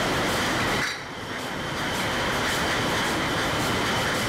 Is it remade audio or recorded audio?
recorded